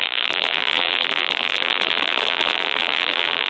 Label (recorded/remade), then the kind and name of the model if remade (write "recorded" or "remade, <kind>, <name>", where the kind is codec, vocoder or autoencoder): remade, vocoder, BigVGAN v2